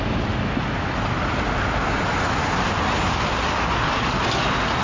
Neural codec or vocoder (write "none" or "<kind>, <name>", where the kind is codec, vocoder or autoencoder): none